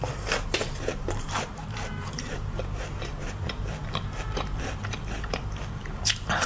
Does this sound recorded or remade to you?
remade